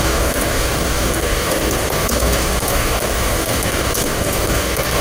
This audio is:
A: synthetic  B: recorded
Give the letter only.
A